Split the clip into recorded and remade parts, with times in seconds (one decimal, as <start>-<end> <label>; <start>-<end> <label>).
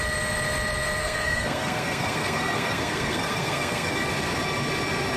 0.0-1.0 recorded; 1.0-4.1 remade; 4.1-5.2 recorded